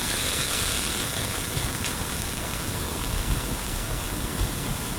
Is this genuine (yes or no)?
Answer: no